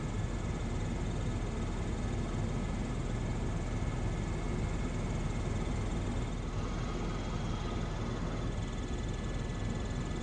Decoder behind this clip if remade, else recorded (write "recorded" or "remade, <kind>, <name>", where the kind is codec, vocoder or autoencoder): recorded